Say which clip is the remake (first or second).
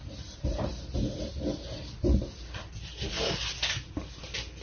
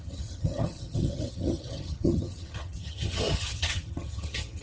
second